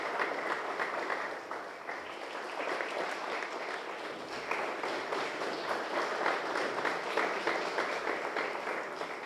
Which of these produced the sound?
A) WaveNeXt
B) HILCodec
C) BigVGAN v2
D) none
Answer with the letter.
C